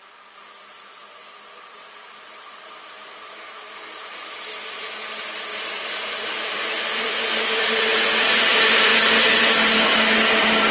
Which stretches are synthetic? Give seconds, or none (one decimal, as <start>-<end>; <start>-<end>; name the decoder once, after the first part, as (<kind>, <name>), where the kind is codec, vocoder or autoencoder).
0.0-3.8 (vocoder, BigVGAN v2); 4.4-8.9